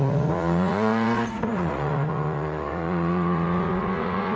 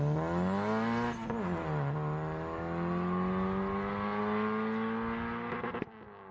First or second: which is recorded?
second